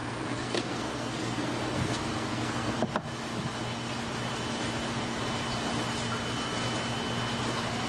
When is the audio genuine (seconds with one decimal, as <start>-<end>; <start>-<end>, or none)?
2.8-7.9